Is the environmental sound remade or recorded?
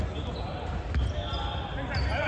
recorded